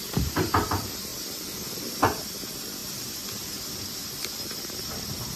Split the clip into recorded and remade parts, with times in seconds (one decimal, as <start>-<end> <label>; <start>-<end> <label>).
0.0-1.1 remade; 1.1-1.7 recorded; 1.7-5.4 remade